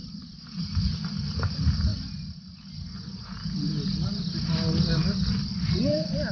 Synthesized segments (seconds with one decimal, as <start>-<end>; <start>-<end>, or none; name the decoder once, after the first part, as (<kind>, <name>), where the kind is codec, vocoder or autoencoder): none